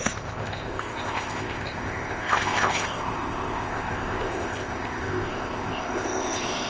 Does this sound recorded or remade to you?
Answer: remade